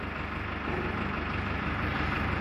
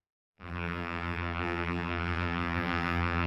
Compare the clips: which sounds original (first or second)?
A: first